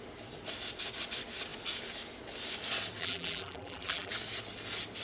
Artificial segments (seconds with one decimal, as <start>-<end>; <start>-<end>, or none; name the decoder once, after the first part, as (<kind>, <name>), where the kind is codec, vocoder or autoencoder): 3.0-4.1 (vocoder, BigVGAN v2)